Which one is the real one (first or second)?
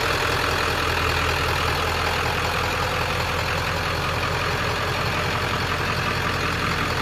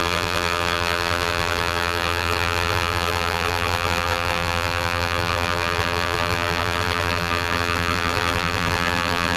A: first